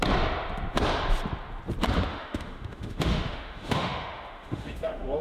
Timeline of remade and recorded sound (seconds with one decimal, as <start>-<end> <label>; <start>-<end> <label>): 0.0-2.1 recorded; 2.1-5.2 remade